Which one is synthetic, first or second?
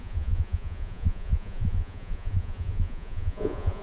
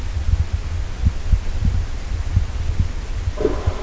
first